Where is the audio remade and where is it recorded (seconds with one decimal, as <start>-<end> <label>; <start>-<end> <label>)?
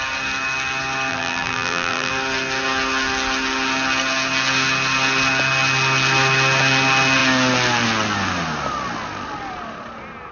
0.0-1.1 recorded; 1.1-2.1 remade; 2.1-10.3 recorded